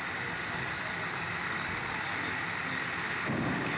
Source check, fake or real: real